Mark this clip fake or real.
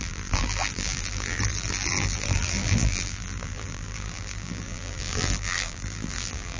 fake